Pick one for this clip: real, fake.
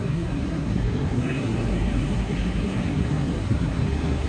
fake